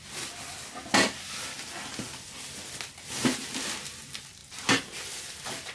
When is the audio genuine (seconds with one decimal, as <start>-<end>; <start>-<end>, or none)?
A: 0.0-5.7